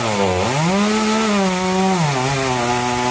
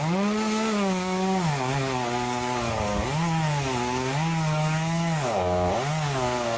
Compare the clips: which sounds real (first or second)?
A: first